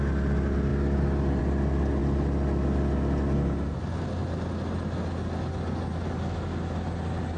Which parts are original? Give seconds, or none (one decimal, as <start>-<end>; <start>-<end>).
0.0-7.4